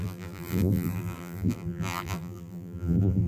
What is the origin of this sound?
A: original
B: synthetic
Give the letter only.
B